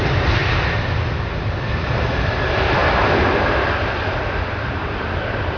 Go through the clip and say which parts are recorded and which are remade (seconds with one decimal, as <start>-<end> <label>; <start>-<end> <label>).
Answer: 0.0-0.4 remade; 0.4-1.7 recorded; 1.7-2.8 remade; 2.8-3.4 recorded; 3.4-5.6 remade